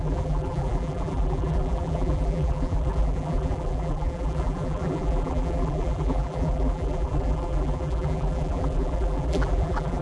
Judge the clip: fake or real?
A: fake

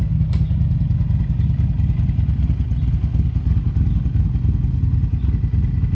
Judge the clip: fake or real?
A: real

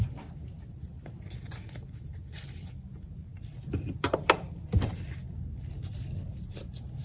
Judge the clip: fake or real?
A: real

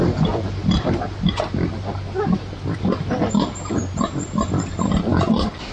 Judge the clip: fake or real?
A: real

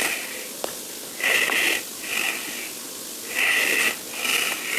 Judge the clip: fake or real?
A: real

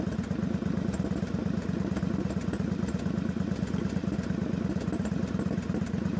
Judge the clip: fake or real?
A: real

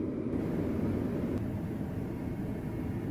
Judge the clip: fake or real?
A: real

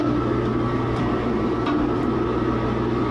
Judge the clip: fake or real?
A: real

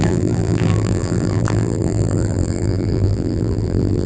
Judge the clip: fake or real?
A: fake